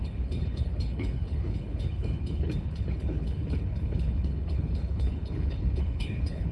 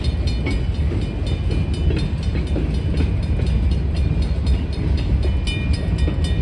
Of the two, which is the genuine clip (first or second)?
second